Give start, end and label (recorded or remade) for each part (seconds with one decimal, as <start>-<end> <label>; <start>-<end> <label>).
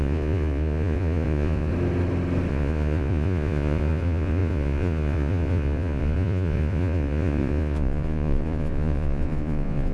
0.0-1.7 remade; 1.7-2.5 recorded; 2.5-9.9 remade